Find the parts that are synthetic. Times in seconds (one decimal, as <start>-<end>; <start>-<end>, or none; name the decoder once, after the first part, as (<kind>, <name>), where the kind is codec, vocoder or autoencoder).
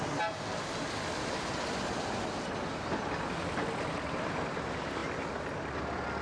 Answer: none